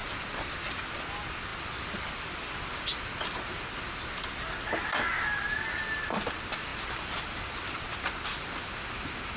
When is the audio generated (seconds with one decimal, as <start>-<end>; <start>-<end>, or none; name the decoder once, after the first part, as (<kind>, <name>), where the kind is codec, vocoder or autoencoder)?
1.5-3.8 (vocoder, BigVGAN v2)